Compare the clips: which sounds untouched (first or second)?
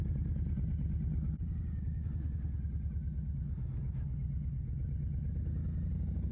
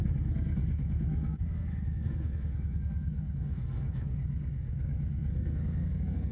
first